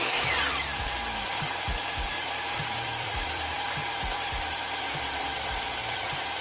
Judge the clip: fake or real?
fake